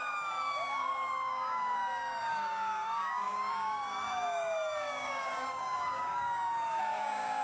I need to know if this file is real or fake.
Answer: fake